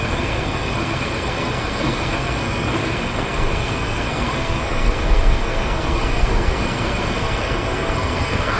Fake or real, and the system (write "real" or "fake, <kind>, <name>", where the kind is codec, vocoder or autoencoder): fake, codec, SNAC